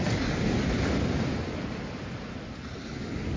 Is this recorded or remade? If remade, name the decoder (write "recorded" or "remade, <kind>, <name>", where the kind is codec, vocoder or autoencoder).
recorded